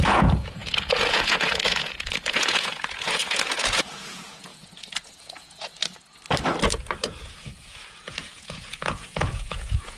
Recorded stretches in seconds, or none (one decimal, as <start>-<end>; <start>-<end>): 5.7-7.3